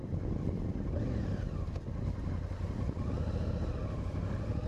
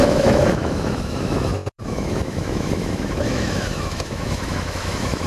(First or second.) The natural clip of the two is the first